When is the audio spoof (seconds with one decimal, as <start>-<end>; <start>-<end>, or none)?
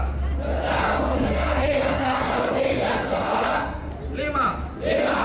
0.8-3.9